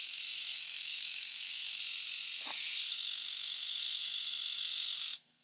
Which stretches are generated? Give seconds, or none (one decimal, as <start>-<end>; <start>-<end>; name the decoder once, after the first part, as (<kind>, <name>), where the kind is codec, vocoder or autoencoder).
0.0-1.8 (codec, SNAC); 2.9-5.4